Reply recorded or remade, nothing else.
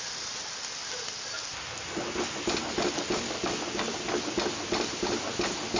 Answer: recorded